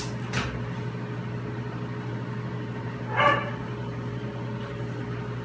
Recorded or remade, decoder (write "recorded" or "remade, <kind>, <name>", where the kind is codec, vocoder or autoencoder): recorded